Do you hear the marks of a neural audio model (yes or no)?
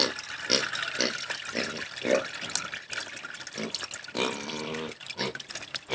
no